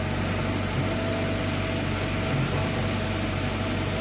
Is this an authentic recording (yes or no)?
yes